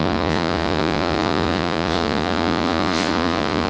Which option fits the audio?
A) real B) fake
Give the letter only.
B